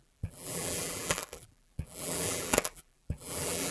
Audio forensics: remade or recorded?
remade